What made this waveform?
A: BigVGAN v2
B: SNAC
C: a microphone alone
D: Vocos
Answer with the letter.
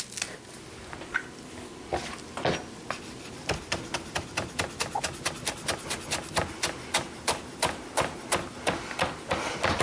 C